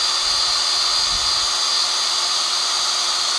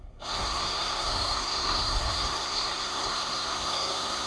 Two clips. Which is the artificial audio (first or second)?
second